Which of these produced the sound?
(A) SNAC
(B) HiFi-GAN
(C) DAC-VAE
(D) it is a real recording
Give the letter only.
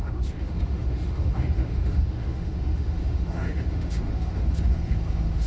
C